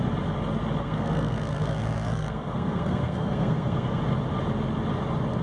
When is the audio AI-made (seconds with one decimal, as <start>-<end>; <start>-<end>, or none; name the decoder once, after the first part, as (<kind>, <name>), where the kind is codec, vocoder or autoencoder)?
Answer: 0.8-4.0 (codec, SNAC)